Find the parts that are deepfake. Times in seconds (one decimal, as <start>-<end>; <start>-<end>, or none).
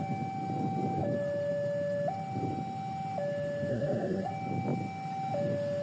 3.7-4.3